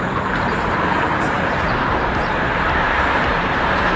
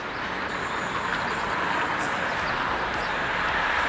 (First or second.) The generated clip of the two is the first